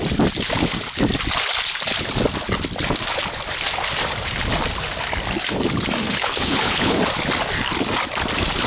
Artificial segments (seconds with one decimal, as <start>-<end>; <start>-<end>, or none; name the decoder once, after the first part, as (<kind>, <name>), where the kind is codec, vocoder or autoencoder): 6.1-7.0 (codec, HILCodec)